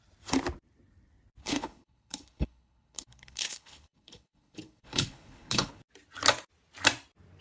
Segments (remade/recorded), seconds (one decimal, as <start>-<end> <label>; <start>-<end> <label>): 0.0-1.4 recorded; 1.4-5.8 remade; 5.8-7.4 recorded